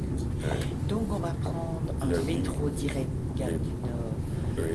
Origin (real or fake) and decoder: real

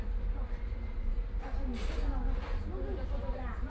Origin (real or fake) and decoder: real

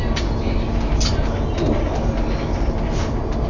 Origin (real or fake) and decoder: real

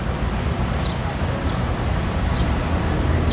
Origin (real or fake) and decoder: fake, vocoder, BigVGAN v2